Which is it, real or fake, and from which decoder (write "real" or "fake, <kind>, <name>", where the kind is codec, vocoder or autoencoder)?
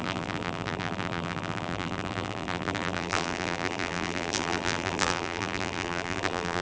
fake, vocoder, BigVGAN v2